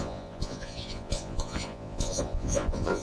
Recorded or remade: remade